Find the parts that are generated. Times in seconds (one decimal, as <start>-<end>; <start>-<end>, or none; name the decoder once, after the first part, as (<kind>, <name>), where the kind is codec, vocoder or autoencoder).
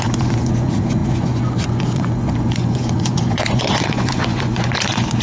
0.0-5.2 (vocoder, Vocos)